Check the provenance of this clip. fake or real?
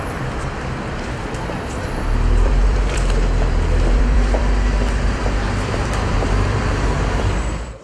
fake